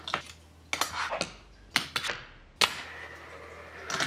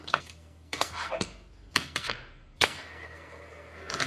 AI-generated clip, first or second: second